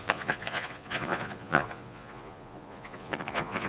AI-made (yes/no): yes